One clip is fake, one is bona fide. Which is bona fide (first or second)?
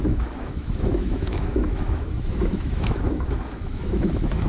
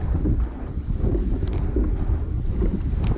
second